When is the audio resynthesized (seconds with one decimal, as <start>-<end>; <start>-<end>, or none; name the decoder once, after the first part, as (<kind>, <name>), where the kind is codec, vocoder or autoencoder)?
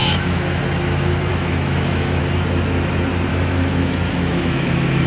0.0-0.6 (autoencoder, DAC-VAE); 1.3-2.2; 3.3-5.1